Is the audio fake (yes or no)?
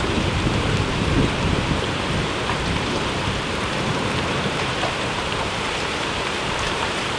yes